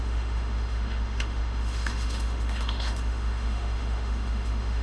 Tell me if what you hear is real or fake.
fake